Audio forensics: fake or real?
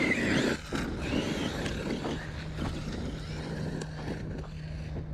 real